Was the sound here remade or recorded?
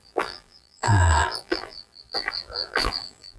remade